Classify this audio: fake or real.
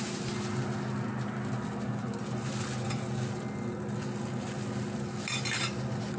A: real